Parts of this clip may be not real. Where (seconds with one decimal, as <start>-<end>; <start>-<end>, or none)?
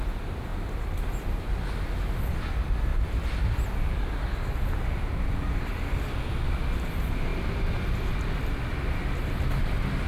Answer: none